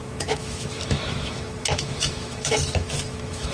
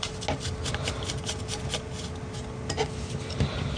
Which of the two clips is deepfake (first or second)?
first